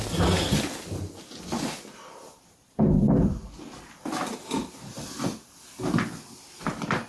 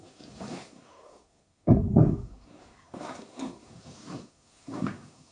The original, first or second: first